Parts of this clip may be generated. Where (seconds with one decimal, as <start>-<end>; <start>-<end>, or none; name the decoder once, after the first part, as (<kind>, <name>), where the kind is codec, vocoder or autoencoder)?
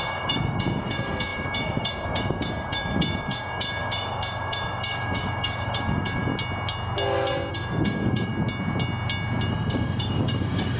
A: 0.0-6.3 (codec, DAC); 7.5-8.3; 9.5-10.8